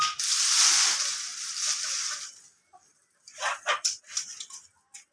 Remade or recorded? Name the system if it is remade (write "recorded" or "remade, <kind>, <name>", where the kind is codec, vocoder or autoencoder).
recorded